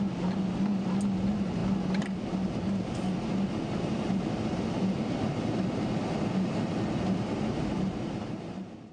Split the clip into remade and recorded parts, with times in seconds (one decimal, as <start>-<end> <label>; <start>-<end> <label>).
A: 0.0-8.9 recorded

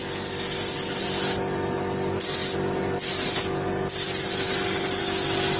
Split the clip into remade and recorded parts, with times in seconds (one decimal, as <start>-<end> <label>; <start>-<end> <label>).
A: 0.0-5.6 recorded

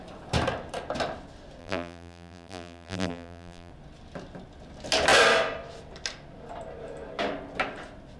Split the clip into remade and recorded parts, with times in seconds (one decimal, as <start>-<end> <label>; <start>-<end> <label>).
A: 0.0-1.6 recorded; 1.6-3.7 remade; 3.7-8.2 recorded

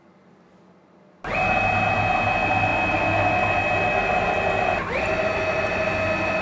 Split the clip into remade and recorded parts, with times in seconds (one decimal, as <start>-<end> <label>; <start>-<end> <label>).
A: 0.0-6.4 recorded